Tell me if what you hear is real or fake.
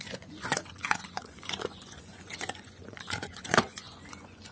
fake